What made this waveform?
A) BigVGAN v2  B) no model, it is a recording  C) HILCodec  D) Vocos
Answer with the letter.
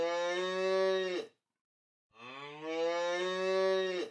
B